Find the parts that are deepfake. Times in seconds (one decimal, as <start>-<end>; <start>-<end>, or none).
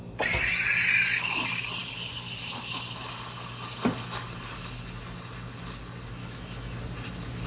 6.2-6.8